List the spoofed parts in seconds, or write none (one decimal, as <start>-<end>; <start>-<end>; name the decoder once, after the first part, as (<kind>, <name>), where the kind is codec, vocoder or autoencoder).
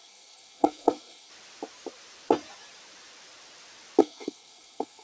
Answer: 0.0-1.3 (codec, SNAC); 4.0-5.0